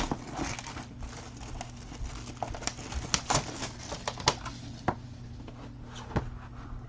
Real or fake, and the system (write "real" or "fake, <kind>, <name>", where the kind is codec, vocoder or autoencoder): real